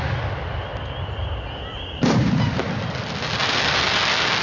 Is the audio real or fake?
real